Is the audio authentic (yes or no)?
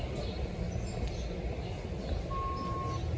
yes